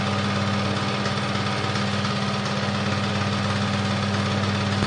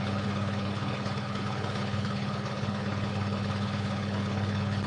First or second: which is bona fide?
first